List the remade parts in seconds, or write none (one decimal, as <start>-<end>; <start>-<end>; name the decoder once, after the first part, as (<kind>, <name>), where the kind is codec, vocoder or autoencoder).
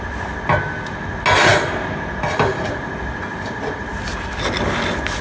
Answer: none